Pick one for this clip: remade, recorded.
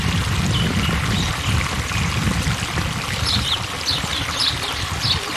recorded